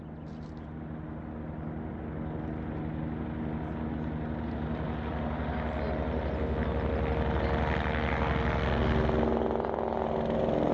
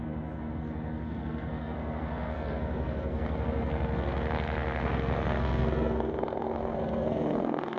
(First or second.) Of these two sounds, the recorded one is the first